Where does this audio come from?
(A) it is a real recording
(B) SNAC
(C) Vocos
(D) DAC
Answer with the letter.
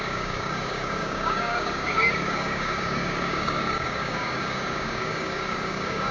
D